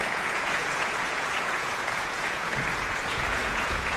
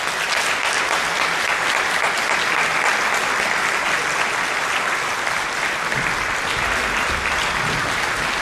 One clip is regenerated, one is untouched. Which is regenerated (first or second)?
first